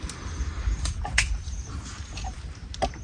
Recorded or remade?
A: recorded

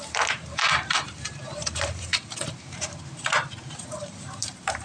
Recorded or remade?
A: remade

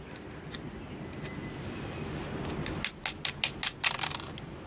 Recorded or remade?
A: recorded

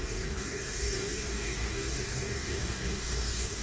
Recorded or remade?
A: remade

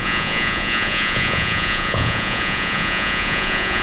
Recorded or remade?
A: remade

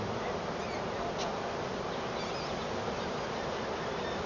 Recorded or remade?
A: recorded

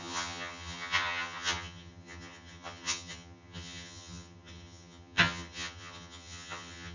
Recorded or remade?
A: remade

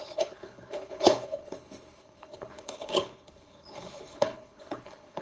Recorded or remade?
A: remade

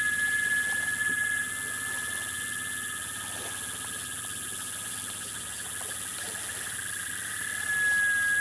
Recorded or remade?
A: recorded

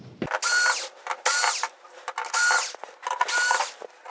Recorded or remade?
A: recorded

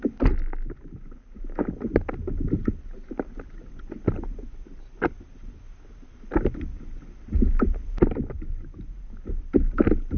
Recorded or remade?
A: recorded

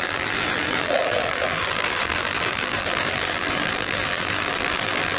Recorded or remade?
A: remade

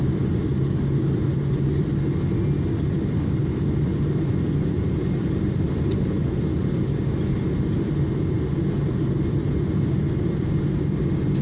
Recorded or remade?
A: recorded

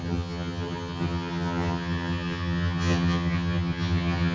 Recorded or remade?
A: remade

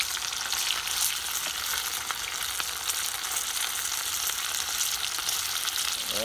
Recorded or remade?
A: recorded